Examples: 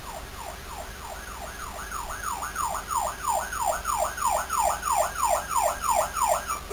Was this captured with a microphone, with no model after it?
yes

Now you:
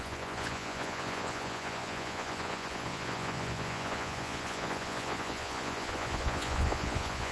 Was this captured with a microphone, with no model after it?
no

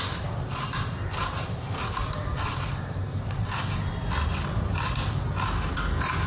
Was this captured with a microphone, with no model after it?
yes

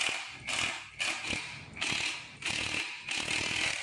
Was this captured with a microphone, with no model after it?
yes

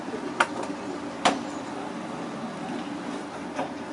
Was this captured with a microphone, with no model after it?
yes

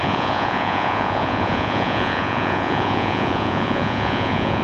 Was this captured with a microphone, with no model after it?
no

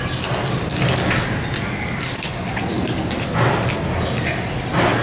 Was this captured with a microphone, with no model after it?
yes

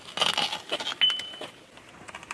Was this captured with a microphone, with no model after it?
yes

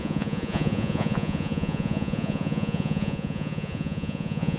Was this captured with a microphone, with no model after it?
no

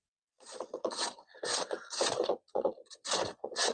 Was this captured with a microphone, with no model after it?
no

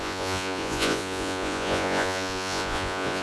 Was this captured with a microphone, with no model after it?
no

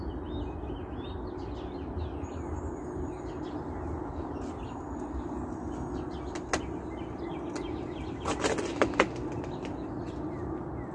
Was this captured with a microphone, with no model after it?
yes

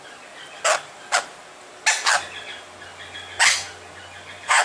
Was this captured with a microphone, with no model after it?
yes